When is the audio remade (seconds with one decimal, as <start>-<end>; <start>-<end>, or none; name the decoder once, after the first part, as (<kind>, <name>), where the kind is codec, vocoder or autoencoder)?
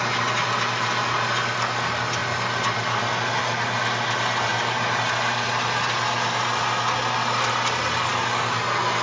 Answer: none